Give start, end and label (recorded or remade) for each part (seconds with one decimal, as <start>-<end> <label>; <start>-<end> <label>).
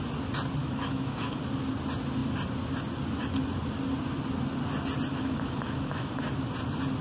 0.0-0.6 recorded; 0.6-1.4 remade; 1.4-5.1 recorded; 5.1-6.3 remade; 6.3-7.0 recorded